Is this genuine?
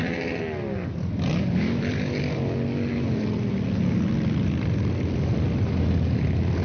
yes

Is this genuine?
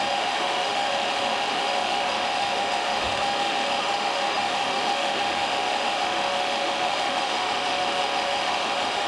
no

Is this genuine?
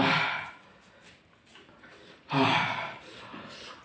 yes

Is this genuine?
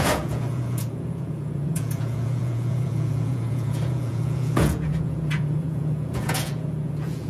no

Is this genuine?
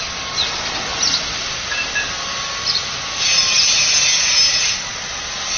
yes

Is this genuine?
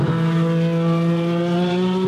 yes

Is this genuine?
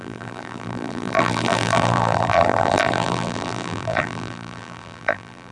no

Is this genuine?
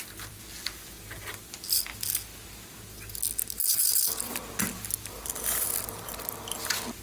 yes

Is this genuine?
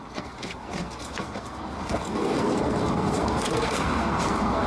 no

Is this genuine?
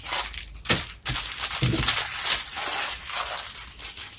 yes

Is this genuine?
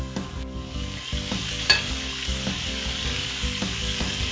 no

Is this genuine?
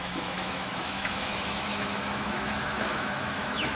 no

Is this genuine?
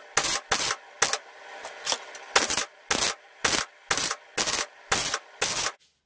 yes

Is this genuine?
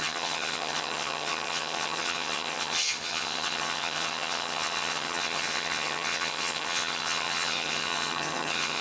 no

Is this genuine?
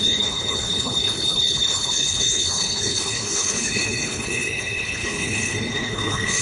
no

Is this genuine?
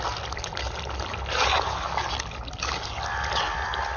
yes